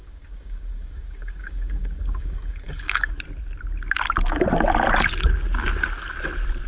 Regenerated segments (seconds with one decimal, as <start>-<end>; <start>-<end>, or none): 0.0-3.1